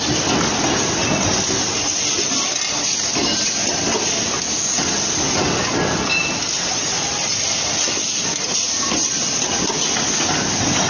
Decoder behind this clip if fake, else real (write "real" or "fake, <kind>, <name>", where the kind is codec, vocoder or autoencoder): real